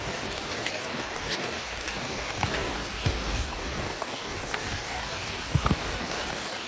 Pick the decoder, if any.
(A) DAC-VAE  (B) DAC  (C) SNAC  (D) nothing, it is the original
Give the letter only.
B